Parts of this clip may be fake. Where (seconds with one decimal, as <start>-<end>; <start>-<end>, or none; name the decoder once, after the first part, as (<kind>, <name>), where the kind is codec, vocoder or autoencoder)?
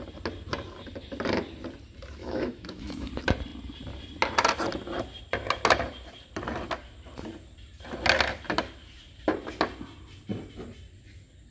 2.2-3.1 (autoencoder, DAC-VAE)